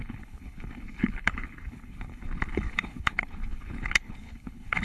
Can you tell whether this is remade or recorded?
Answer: remade